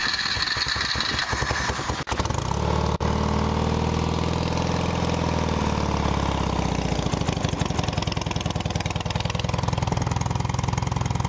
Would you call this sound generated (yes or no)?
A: no